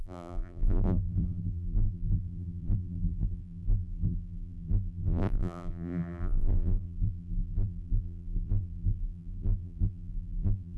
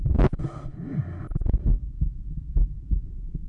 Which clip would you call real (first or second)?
second